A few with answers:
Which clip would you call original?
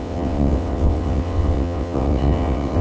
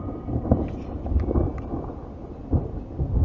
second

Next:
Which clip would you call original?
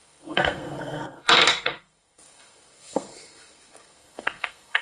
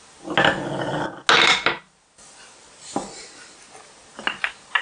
second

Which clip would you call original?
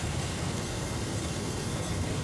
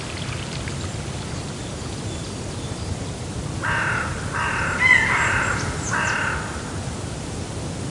second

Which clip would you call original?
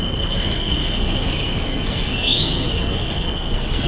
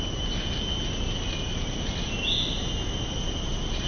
second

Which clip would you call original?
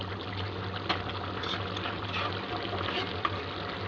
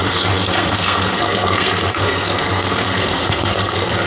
first